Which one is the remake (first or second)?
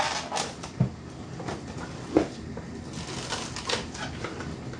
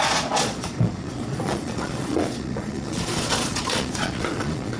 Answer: second